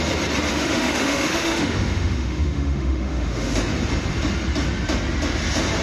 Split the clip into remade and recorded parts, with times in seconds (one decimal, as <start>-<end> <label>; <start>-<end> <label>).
0.0-0.5 recorded; 0.5-3.5 remade; 3.5-5.8 recorded